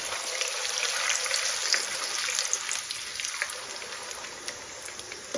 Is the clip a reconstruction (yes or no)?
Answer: no